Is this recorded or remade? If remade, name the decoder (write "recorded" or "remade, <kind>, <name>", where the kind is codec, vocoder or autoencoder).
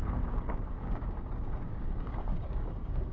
remade, codec, DAC